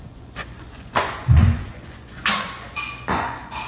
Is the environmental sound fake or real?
fake